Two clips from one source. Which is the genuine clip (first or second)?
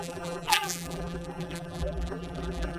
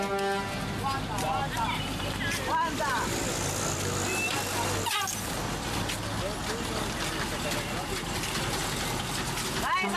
second